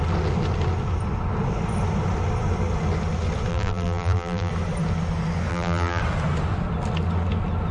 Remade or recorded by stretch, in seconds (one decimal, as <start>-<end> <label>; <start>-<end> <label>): 0.0-3.5 recorded; 3.5-4.5 remade; 4.5-5.5 recorded; 5.5-6.0 remade; 6.0-7.7 recorded